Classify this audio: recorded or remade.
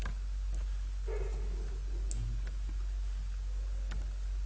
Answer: recorded